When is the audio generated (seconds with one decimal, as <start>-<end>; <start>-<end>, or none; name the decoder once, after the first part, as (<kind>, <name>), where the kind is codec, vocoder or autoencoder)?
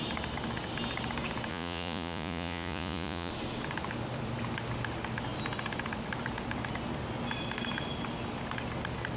1.5-3.3 (vocoder, Vocos)